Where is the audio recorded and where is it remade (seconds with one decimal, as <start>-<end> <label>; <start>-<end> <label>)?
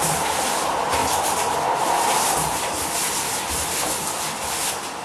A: 0.0-5.0 recorded